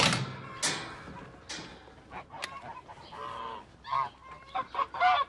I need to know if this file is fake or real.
real